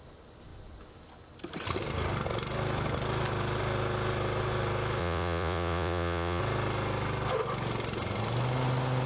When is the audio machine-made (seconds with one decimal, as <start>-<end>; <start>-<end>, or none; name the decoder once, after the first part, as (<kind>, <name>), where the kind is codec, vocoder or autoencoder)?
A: 5.0-6.4 (vocoder, Vocos)